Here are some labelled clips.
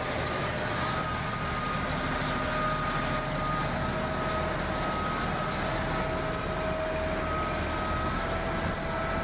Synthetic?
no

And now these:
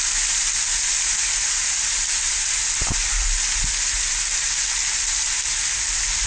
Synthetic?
no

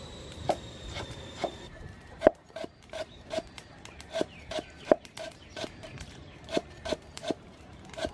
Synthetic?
yes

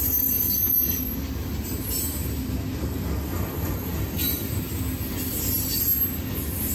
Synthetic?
no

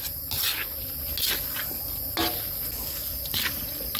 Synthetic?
no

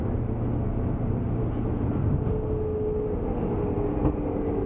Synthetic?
no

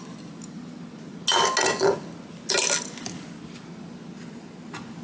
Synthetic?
no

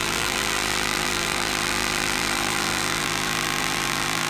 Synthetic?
yes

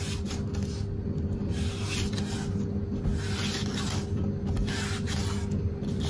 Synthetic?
no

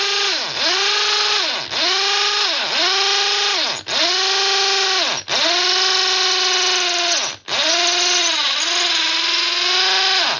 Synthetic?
no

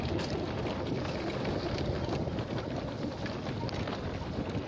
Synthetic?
no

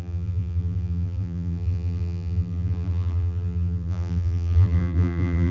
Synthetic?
yes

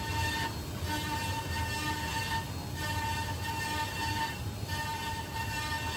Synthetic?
no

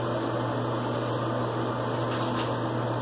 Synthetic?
no